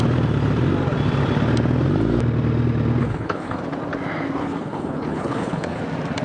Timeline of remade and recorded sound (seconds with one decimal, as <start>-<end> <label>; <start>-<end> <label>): 0.0-3.0 recorded; 3.0-3.6 remade; 3.6-4.4 recorded; 4.4-5.8 remade; 5.8-6.2 recorded